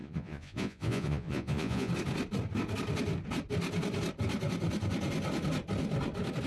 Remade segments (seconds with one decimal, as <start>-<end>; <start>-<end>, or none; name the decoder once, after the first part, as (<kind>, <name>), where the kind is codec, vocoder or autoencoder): 0.0-1.9 (vocoder, Vocos)